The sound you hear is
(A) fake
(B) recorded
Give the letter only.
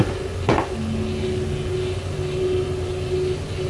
B